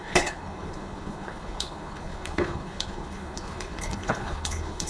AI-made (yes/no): yes